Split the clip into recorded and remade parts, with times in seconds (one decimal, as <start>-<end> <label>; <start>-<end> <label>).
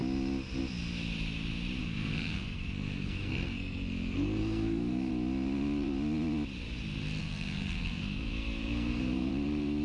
0.0-1.8 recorded; 1.8-5.1 remade; 5.1-7.2 recorded; 7.2-9.3 remade; 9.3-9.8 recorded